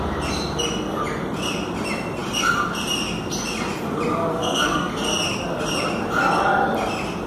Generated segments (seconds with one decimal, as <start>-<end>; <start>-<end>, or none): 4.3-4.9